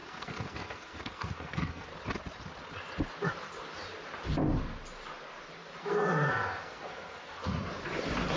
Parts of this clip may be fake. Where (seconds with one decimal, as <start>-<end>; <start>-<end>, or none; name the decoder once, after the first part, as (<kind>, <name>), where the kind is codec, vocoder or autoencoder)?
0.0-1.9 (codec, SNAC); 5.8-7.4